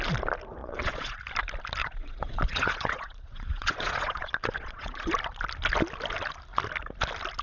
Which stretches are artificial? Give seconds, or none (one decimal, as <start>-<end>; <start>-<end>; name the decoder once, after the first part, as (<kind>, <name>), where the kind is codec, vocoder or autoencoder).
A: 0.6-1.2 (vocoder, Vocos); 1.8-5.1